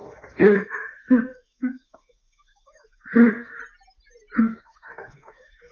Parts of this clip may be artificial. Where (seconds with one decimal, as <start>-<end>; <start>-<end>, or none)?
0.0-3.6; 4.4-5.7

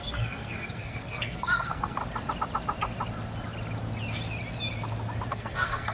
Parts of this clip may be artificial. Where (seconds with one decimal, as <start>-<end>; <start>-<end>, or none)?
0.0-2.0; 5.3-5.9

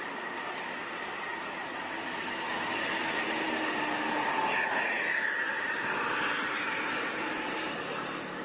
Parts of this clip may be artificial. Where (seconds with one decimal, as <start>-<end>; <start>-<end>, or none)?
0.0-8.4